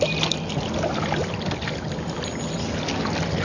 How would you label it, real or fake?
real